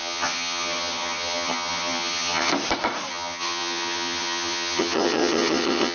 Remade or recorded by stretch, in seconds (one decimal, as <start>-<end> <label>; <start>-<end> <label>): 0.0-2.5 remade; 2.5-3.1 recorded; 3.1-5.9 remade